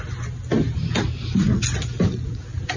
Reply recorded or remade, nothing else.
recorded